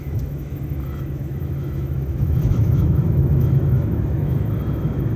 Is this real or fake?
fake